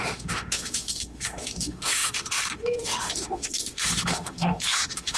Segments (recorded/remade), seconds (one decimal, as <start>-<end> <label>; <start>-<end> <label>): 0.0-5.2 remade